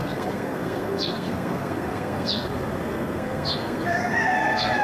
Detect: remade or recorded remade